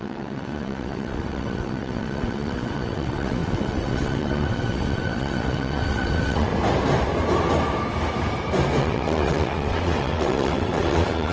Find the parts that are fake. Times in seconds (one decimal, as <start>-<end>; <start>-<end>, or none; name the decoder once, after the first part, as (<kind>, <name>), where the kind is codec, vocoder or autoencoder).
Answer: 0.0-6.5 (vocoder, WaveNeXt); 8.8-11.3